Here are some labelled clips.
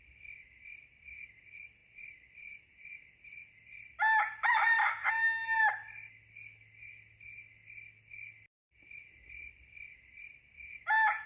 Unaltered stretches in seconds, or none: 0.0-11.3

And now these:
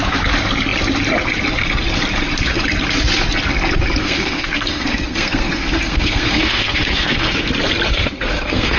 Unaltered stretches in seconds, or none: 0.0-4.0; 7.5-7.9

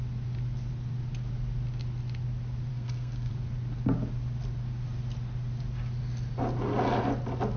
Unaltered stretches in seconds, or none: 0.0-2.7; 3.3-7.6